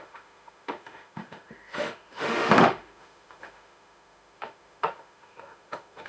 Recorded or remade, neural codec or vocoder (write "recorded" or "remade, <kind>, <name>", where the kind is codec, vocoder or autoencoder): remade, autoencoder, DAC-VAE